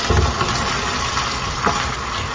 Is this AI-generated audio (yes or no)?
no